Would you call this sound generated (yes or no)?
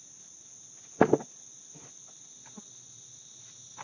no